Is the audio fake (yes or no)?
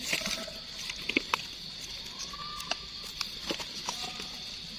no